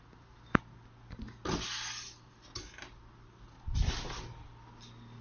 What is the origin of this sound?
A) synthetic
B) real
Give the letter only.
B